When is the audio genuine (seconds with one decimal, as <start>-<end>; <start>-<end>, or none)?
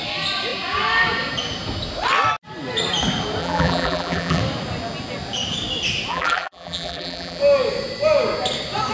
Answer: 0.0-3.4; 4.4-6.1; 7.4-8.9